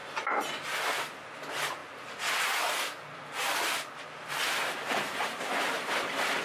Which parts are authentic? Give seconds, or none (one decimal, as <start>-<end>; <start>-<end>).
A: 0.0-0.9; 1.8-5.2